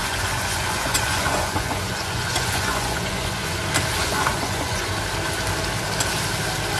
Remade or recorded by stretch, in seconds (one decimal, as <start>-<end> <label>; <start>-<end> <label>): 0.0-3.6 remade; 3.6-4.0 recorded; 4.0-4.9 remade; 4.9-6.8 recorded